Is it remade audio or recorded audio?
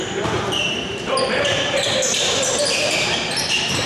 remade